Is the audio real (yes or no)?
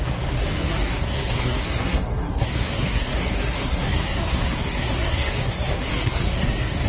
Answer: no